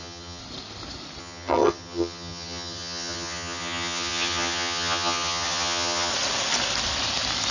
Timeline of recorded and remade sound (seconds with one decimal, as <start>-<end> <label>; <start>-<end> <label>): 0.0-0.4 remade; 0.4-1.2 recorded; 1.2-6.1 remade; 6.1-7.5 recorded